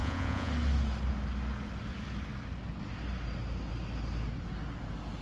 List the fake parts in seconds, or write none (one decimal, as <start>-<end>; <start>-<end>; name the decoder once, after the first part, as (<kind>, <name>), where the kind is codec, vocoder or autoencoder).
0.0-0.5 (vocoder, Vocos)